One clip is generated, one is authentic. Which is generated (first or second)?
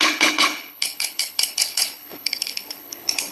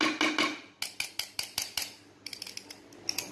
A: first